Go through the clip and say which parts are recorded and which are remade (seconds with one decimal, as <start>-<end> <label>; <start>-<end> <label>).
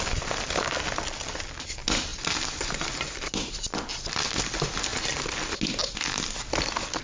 0.0-7.0 recorded